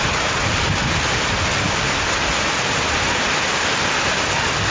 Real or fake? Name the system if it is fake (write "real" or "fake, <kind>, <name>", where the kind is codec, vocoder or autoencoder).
real